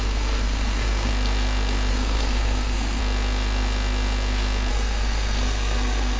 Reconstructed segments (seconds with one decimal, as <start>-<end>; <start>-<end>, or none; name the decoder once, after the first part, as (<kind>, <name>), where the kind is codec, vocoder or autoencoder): 0.0-1.1 (codec, SNAC); 1.9-3.0; 4.7-6.2